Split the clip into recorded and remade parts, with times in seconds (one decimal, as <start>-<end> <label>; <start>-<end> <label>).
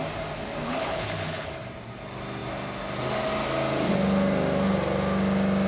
0.0-0.6 recorded; 0.6-1.5 remade; 1.5-5.7 recorded